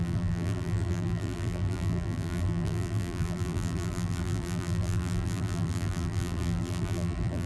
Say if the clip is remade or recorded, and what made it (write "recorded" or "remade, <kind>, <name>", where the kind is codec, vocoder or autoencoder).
remade, vocoder, BigVGAN v2